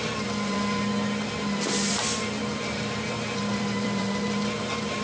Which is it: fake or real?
fake